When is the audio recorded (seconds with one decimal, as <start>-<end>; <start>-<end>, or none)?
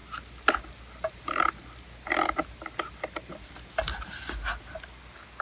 0.0-5.4